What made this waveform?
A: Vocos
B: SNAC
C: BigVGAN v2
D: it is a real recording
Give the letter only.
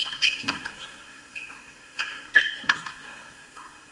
B